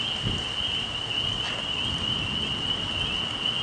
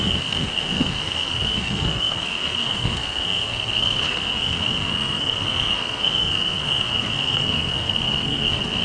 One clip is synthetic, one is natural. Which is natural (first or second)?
first